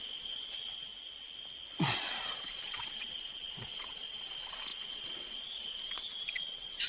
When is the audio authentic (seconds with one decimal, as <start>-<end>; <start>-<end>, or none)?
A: 0.9-1.8